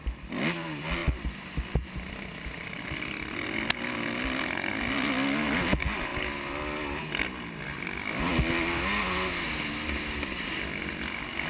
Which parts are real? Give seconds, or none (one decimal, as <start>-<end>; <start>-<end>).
0.0-11.5